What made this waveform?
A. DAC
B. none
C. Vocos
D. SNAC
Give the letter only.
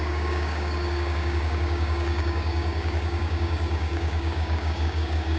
A